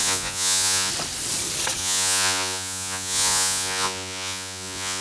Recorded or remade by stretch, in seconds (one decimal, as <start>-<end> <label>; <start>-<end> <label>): 0.0-0.9 remade; 0.9-1.8 recorded; 1.8-5.0 remade